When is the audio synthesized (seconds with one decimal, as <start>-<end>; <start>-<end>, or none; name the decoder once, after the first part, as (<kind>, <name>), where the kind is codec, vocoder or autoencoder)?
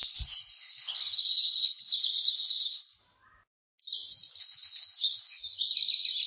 0.0-3.0 (codec, HILCodec); 4.4-5.4